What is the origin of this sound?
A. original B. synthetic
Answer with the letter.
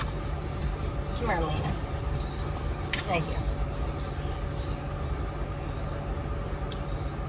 A